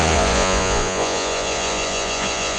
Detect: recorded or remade remade